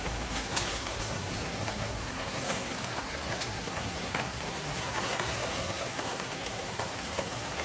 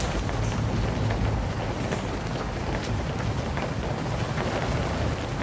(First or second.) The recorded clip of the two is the second